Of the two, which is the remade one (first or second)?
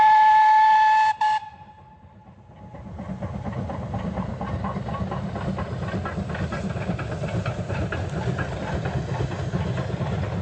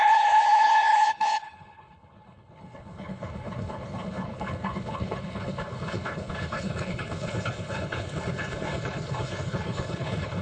second